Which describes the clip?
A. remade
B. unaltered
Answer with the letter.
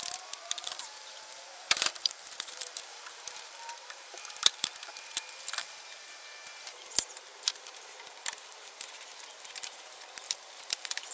A